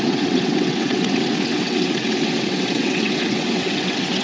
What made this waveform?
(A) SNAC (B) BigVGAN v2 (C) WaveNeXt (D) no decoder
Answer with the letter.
C